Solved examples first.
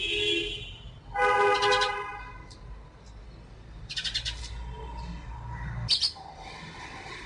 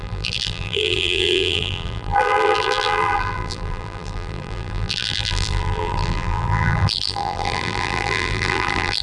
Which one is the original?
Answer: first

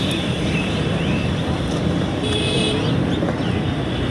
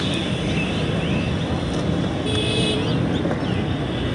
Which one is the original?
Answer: second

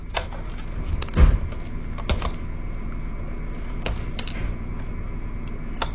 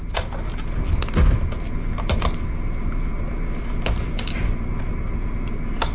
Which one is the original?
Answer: first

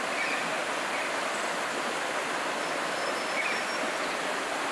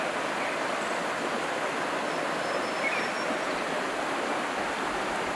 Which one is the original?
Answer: second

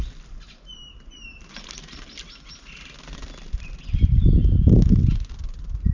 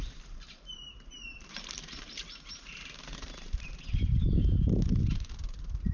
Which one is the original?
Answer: first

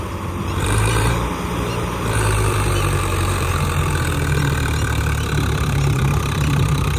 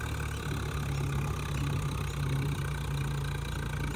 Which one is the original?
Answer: second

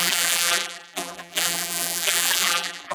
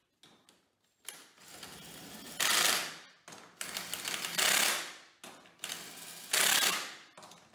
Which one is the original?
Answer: second